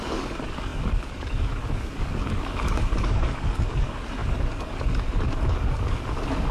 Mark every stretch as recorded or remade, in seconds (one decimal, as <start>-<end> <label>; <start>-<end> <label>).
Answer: 0.0-6.5 remade